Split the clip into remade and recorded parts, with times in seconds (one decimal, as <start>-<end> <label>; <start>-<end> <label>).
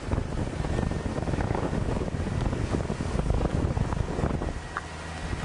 0.0-1.1 recorded; 1.1-3.6 remade; 3.6-5.4 recorded